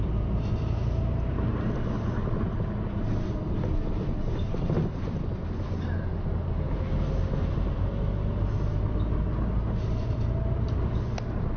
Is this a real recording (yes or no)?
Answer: yes